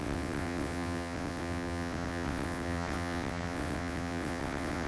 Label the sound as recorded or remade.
remade